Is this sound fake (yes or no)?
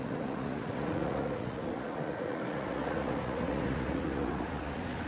yes